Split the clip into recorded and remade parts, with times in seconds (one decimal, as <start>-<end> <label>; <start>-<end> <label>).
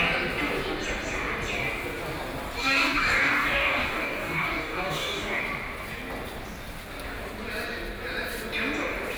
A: 0.0-2.6 recorded; 2.6-5.4 remade; 5.4-9.2 recorded